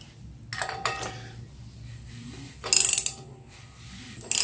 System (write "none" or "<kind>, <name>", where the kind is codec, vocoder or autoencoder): none